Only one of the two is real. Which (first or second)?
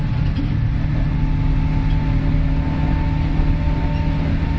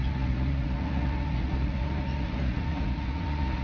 first